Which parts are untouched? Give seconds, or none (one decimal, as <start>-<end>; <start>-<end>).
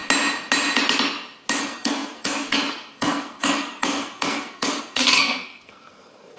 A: 0.0-1.6